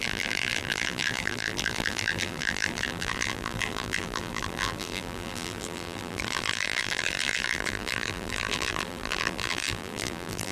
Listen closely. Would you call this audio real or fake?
fake